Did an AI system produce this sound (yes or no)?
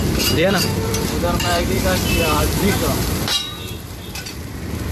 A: yes